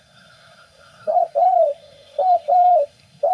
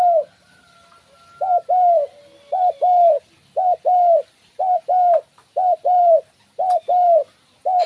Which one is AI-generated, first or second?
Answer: first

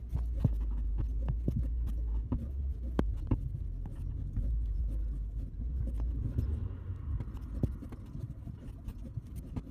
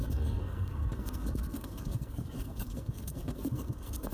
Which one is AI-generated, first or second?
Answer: second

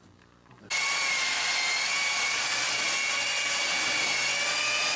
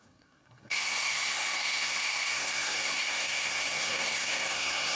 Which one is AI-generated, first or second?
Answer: second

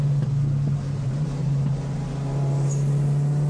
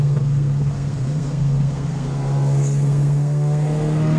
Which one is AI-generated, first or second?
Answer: second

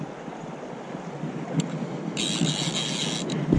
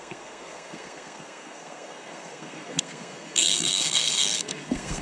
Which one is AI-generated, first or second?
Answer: second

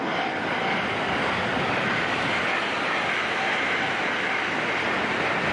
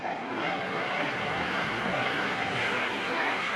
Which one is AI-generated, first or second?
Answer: second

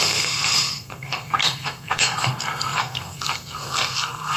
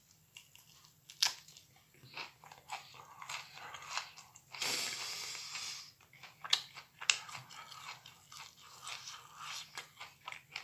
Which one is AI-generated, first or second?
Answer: first